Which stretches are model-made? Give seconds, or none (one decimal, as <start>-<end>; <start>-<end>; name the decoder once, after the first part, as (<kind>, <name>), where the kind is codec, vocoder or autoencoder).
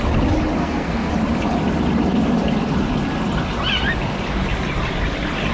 0.6-1.1 (codec, SNAC)